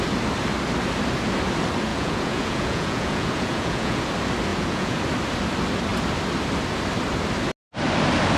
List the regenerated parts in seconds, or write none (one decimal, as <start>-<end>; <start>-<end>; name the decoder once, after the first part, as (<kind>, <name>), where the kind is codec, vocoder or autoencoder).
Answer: 1.9-4.0 (vocoder, Vocos); 4.5-5.0